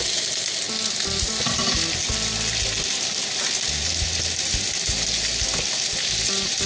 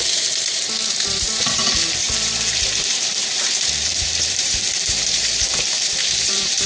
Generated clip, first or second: second